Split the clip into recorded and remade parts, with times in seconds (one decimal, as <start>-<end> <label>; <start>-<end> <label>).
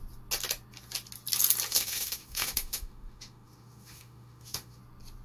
0.0-1.7 recorded; 1.7-4.8 remade; 4.8-5.2 recorded